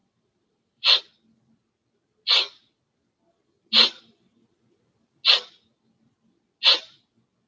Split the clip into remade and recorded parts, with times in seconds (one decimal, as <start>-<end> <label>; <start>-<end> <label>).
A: 0.0-1.0 remade; 1.0-7.5 recorded